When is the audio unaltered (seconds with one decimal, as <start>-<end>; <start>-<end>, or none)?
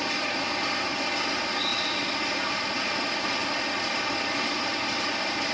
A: 0.0-5.5